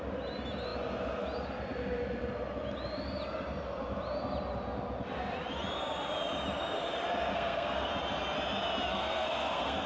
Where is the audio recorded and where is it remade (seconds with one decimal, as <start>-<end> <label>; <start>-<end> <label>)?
0.0-7.3 recorded; 7.3-7.9 remade; 7.9-8.9 recorded; 8.9-9.9 remade